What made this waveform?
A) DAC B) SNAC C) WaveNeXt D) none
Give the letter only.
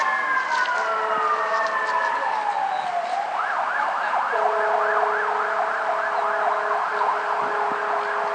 D